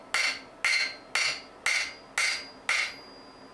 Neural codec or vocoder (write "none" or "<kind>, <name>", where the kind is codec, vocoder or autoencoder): none